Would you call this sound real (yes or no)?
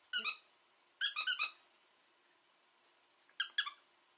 yes